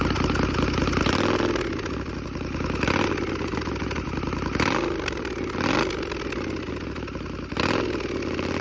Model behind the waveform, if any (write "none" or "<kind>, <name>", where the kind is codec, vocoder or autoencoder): none